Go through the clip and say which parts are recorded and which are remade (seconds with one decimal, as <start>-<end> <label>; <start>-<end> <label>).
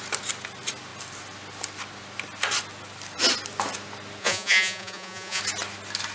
0.0-4.2 recorded; 4.2-5.4 remade; 5.4-6.1 recorded